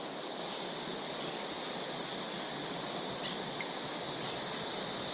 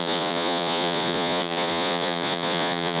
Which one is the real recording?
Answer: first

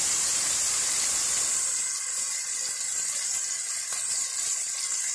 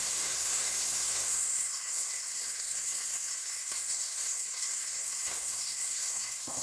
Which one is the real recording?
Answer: first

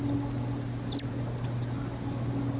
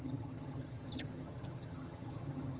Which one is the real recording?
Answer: first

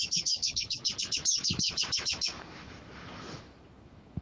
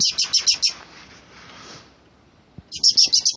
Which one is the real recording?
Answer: second